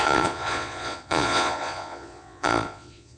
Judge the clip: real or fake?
fake